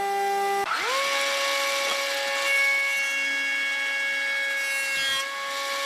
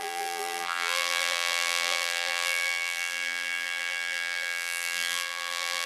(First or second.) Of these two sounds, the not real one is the second